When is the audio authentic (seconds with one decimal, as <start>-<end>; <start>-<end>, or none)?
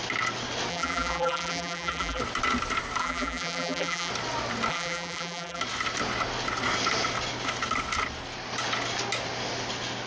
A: 0.0-0.7; 2.2-3.0; 4.1-4.7; 5.6-10.1